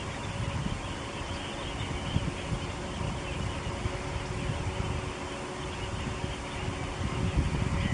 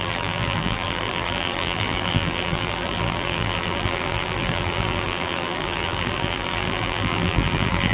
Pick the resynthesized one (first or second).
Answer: second